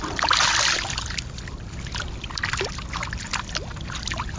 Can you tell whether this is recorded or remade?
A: recorded